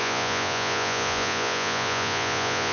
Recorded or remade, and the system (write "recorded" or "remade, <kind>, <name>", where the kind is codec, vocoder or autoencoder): remade, vocoder, Vocos